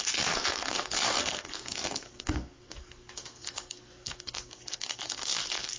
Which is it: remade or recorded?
remade